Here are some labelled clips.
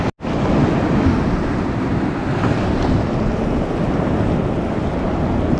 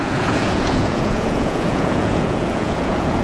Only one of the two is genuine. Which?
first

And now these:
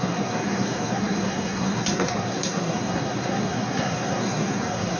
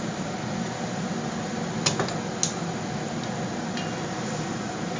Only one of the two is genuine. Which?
second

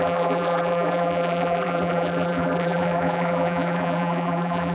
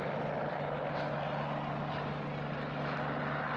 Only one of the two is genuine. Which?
second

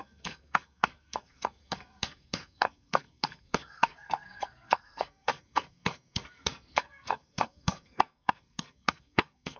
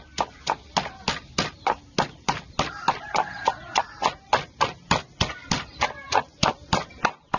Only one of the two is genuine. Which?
second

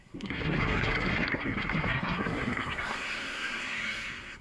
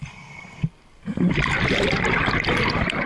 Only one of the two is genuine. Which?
second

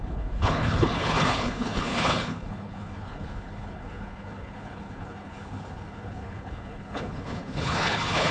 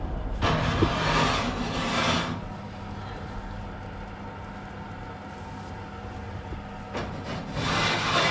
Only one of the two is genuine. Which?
second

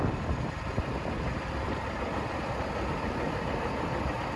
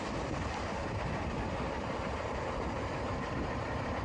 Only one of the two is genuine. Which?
first